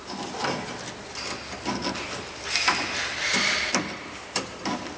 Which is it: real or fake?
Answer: real